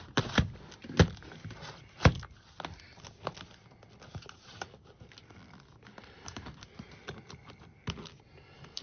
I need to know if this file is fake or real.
real